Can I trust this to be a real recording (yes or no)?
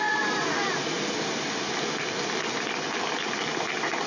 yes